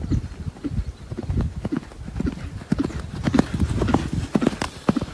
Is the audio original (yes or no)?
yes